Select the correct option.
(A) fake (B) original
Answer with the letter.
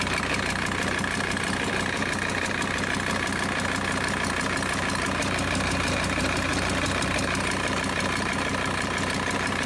A